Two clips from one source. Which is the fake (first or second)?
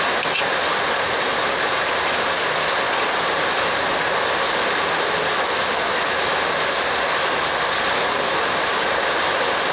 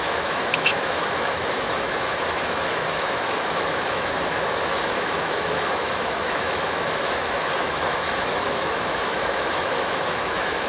second